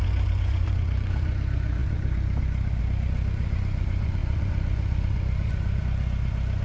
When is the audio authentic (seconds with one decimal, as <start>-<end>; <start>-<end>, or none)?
none